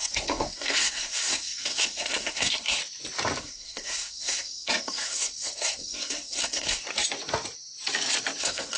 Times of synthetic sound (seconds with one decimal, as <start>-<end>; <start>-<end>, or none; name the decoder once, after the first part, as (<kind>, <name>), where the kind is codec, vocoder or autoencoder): 0.0-2.8 (codec, SNAC); 3.4-6.8; 8.4-8.8